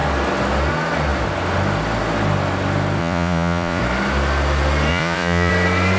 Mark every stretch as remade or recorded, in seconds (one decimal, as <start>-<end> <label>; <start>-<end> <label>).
0.0-3.0 recorded; 3.0-3.8 remade; 3.8-4.9 recorded; 4.9-5.5 remade; 5.5-6.0 recorded